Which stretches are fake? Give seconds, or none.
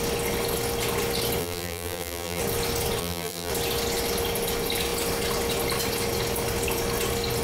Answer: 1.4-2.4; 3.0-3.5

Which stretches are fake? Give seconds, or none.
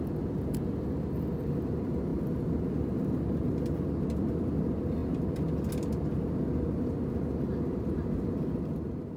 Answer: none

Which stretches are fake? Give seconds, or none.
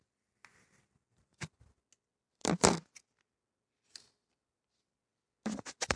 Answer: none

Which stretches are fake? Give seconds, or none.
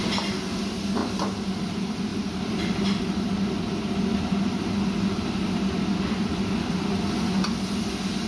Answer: none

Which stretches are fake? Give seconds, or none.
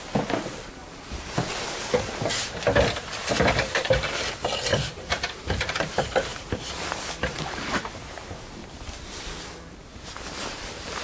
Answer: 0.0-0.8; 3.4-4.7; 5.4-6.3; 7.3-8.6; 10.5-11.0